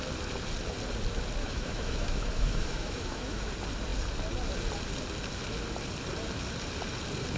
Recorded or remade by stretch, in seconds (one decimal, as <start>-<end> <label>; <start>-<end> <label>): 0.0-1.4 recorded; 1.4-3.5 remade; 3.5-7.4 recorded